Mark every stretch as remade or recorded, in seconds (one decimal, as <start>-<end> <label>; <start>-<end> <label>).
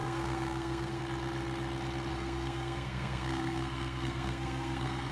0.0-1.0 remade; 1.0-2.1 recorded; 2.1-5.1 remade